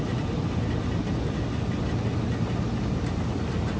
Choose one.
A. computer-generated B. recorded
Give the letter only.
B